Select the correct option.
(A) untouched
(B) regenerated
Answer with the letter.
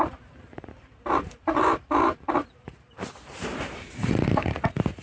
B